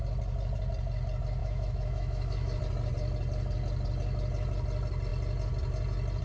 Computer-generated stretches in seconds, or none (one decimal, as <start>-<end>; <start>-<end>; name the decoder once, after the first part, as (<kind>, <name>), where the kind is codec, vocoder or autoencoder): 1.4-2.6 (autoencoder, DAC-VAE)